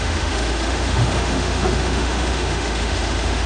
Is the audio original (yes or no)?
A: no